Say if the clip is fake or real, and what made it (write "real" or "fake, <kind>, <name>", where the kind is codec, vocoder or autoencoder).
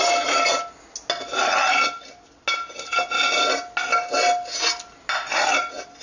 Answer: real